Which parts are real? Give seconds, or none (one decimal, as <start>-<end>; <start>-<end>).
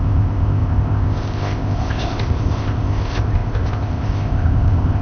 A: none